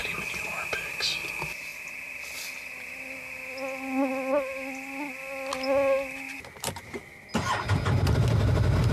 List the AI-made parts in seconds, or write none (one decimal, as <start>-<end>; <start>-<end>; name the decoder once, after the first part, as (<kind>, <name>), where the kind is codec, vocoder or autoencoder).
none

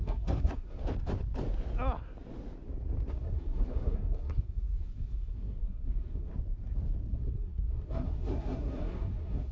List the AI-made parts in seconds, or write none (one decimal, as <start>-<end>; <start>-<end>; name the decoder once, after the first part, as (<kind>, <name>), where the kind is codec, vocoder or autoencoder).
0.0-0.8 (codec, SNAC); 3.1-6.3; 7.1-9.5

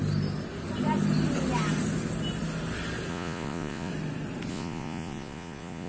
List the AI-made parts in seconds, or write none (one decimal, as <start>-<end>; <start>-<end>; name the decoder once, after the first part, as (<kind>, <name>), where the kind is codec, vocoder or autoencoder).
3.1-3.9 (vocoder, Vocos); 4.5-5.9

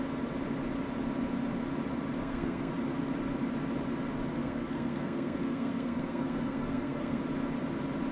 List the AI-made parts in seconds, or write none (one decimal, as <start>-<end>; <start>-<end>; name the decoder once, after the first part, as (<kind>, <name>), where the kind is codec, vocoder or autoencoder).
2.2-2.7 (codec, SNAC); 4.3-7.2

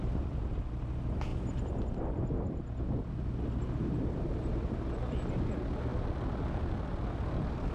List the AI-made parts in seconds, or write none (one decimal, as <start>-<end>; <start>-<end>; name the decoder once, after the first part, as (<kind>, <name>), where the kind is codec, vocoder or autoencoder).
none